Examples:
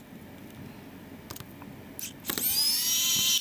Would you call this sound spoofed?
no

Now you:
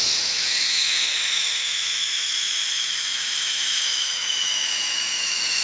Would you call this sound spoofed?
yes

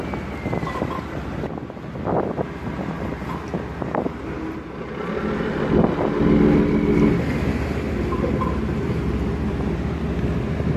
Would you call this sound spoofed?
no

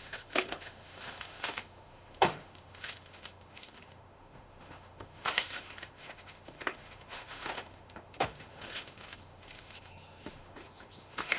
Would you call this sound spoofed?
yes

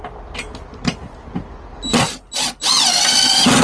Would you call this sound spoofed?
no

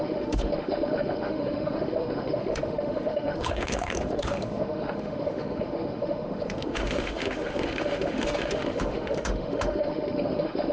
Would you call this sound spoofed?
yes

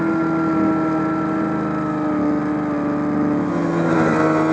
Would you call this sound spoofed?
no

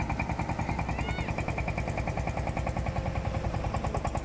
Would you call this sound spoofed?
no